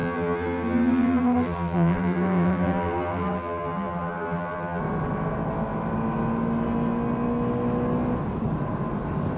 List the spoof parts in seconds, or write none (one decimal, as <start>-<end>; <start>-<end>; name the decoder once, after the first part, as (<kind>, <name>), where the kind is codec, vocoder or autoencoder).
0.0-4.8 (vocoder, BigVGAN v2)